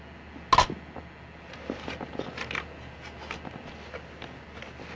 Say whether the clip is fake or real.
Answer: real